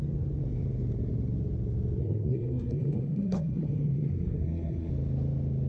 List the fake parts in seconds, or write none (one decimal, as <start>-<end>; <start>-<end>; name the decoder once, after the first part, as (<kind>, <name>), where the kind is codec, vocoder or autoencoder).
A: 2.0-4.9 (codec, SNAC)